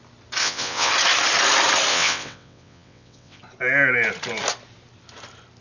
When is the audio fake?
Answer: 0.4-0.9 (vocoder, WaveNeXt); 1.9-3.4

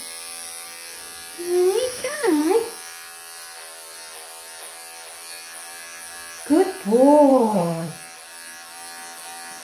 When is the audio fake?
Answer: 1.9-2.4 (autoencoder, DAC-VAE); 7.3-7.9

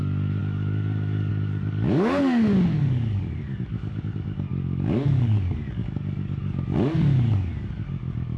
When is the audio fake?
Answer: 0.0-8.4 (codec, DAC)

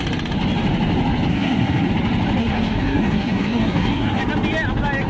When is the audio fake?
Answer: 1.3-1.9 (codec, SNAC); 2.4-4.2

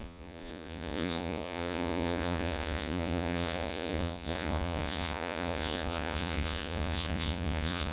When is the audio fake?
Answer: 0.0-7.9 (vocoder, Vocos)

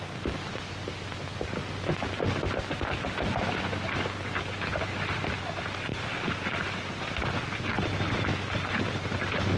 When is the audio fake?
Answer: 5.9-7.6 (vocoder, BigVGAN v2)

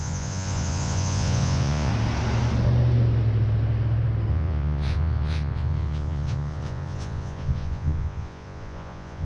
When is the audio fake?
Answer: 0.0-1.9 (vocoder, Vocos); 4.3-9.2

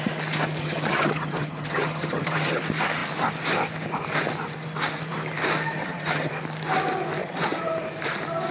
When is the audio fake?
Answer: 0.6-2.6 (vocoder, HiFi-GAN); 5.8-6.3; 7.2-7.7